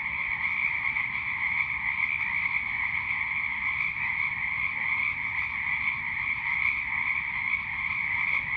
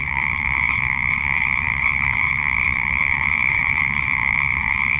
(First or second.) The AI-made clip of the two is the second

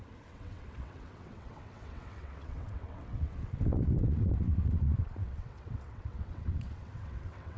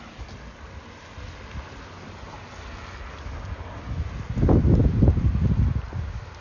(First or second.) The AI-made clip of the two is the first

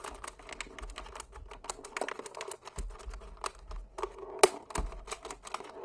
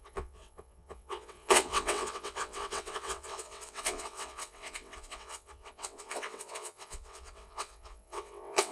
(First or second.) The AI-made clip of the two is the second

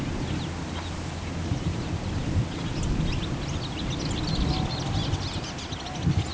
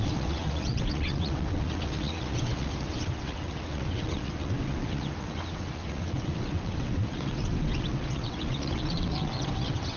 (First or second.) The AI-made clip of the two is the second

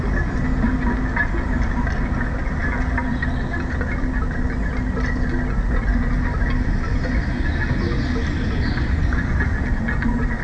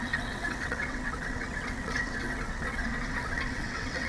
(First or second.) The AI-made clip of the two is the second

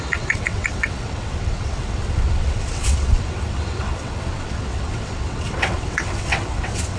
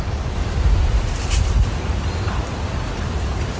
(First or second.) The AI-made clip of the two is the first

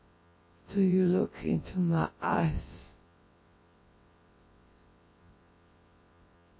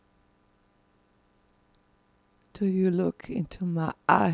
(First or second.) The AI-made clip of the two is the first